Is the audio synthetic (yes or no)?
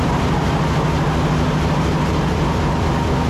no